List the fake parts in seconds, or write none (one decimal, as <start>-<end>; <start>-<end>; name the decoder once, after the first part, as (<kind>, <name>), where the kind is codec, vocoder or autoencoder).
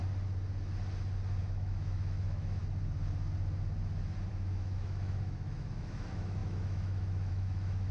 1.4-2.6 (autoencoder, DAC-VAE); 4.3-7.9